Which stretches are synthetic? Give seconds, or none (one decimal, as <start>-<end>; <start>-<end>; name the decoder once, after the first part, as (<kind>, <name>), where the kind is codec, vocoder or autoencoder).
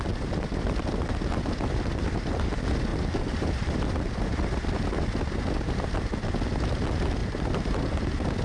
2.9-4.2 (vocoder, BigVGAN v2); 7.2-7.8